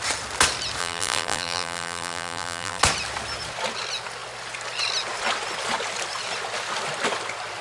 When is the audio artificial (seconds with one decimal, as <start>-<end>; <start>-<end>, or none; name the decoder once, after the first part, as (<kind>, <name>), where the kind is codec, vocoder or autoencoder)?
0.8-2.8 (vocoder, BigVGAN v2)